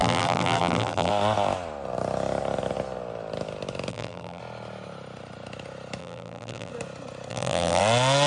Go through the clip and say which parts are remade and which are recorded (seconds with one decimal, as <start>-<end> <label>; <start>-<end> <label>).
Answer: 0.0-1.1 remade; 1.1-3.9 recorded; 3.9-4.4 remade; 4.4-6.0 recorded; 6.0-6.7 remade; 6.7-7.3 recorded; 7.3-7.8 remade; 7.8-8.3 recorded